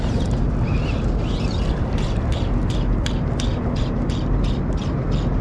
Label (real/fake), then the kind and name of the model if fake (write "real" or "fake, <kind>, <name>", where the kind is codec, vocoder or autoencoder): real